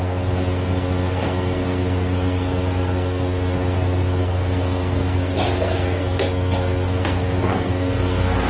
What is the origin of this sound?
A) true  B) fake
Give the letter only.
B